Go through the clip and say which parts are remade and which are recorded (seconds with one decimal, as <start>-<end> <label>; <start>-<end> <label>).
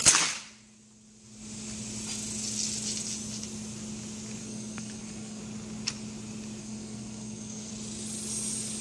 0.0-4.4 recorded; 4.4-5.4 remade; 5.4-6.6 recorded; 6.6-7.7 remade; 7.7-8.8 recorded